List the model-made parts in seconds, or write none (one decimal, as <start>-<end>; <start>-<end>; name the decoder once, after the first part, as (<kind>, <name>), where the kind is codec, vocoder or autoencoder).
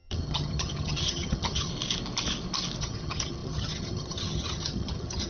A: 0.0-1.7 (vocoder, HiFi-GAN); 2.8-5.3